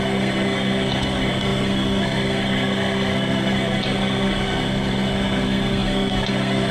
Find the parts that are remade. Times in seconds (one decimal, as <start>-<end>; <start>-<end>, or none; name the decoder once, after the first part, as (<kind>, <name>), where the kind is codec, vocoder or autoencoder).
0.0-6.7 (codec, SNAC)